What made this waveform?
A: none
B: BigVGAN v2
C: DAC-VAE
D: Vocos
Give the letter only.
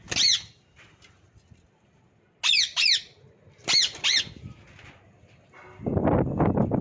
A